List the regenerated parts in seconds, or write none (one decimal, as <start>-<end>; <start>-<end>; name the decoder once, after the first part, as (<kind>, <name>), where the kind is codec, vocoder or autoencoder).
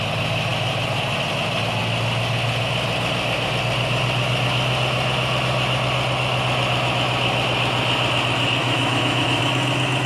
8.6-9.4 (autoencoder, DAC-VAE)